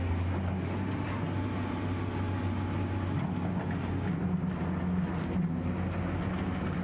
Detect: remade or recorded recorded